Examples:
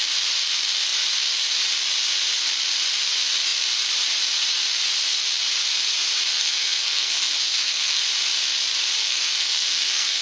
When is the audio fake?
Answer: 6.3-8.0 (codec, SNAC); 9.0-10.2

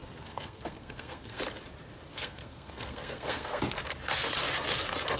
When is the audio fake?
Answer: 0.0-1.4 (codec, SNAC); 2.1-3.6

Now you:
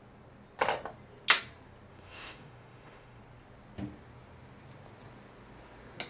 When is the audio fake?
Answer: 1.9-3.2 (autoencoder, DAC-VAE)